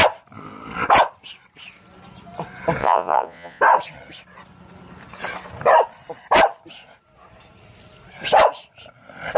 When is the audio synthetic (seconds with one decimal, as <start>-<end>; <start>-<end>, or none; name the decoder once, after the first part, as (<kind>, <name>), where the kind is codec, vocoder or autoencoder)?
2.8-3.6 (vocoder, Vocos)